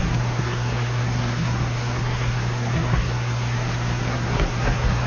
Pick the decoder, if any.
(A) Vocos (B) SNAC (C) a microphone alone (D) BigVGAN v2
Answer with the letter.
B